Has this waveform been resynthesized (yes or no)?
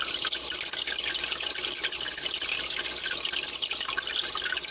no